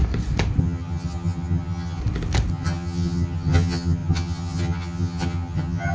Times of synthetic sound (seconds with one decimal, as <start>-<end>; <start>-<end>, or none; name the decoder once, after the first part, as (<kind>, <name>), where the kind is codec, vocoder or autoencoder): 0.6-2.0 (vocoder, HiFi-GAN); 2.5-5.9